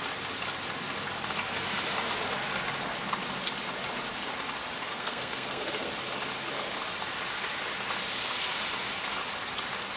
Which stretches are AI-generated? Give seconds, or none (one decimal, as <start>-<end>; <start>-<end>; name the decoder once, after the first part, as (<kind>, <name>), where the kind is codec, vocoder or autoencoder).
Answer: 4.9-5.9 (codec, SNAC)